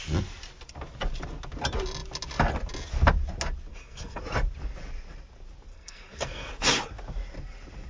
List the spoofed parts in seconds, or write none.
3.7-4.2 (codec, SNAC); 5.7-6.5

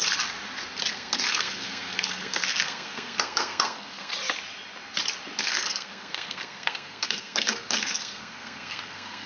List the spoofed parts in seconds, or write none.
0.9-4.1 (codec, SNAC); 5.4-9.3

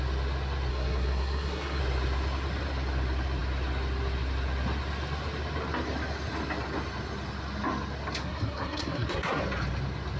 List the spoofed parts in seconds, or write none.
0.7-1.8 (codec, SNAC); 8.2-9.4